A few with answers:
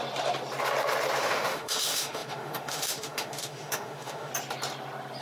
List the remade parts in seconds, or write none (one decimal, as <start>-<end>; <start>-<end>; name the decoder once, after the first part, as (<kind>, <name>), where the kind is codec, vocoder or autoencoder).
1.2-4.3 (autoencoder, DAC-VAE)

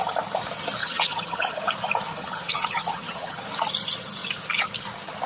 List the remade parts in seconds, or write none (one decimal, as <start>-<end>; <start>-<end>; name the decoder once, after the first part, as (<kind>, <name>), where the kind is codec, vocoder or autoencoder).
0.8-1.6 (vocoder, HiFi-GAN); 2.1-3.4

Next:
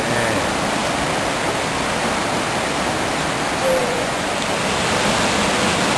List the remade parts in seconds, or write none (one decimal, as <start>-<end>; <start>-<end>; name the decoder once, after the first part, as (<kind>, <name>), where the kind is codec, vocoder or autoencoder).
3.8-4.3 (vocoder, Vocos)